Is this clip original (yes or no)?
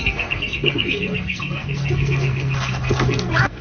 no